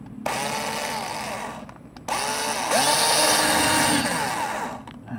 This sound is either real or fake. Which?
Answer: real